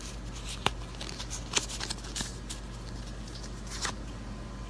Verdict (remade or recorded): recorded